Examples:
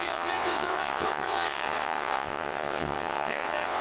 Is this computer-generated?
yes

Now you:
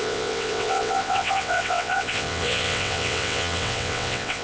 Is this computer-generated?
yes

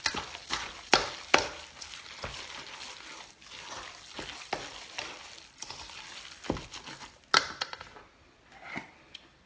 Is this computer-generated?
no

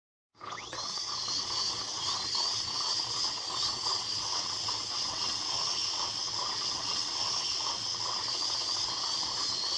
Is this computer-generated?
yes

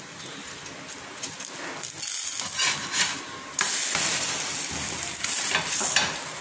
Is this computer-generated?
no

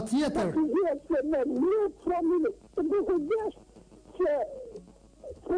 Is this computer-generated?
no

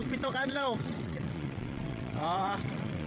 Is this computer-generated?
yes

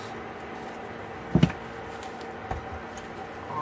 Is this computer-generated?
no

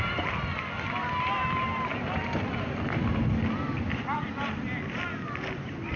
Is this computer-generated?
no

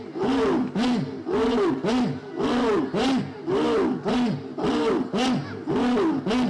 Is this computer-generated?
no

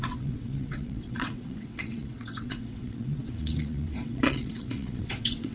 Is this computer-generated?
yes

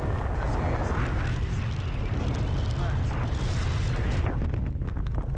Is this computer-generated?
no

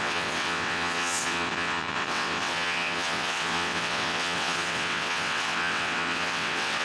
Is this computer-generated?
yes